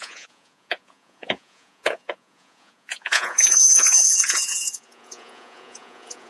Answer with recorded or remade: remade